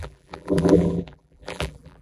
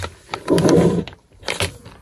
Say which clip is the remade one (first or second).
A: first